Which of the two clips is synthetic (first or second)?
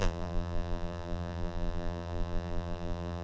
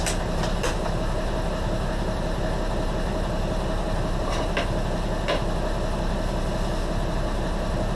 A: first